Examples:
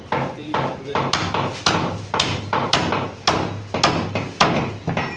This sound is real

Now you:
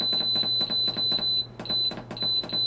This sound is real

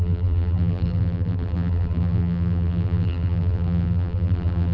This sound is fake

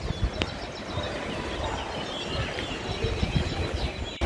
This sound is real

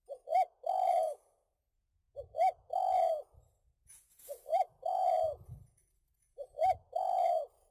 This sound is fake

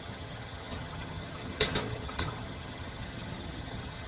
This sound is fake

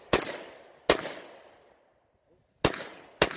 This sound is real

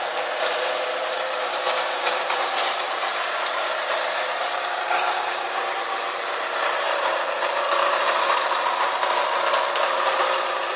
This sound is fake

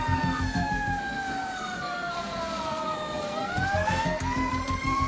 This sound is fake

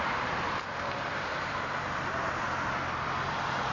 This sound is fake